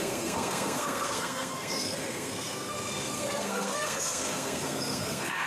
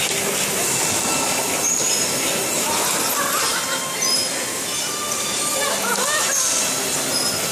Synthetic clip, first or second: first